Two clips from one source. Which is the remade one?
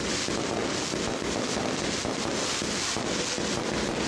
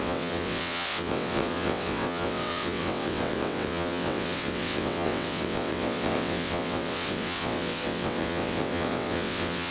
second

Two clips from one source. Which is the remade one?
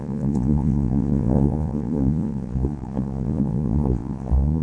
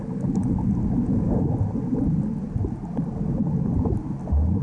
first